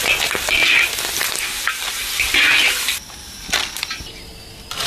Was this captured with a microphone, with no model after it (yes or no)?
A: yes